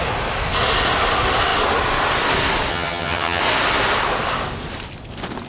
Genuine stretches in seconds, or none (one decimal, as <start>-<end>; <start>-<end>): 0.0-2.7; 3.4-5.5